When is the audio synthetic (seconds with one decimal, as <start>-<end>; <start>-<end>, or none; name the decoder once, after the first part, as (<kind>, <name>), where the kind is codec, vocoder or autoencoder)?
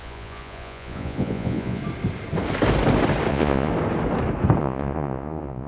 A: 0.0-1.8 (vocoder, Vocos); 3.3-3.7; 4.6-5.7